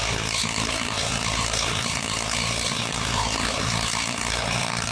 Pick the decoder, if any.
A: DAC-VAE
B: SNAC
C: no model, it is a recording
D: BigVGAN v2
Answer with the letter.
B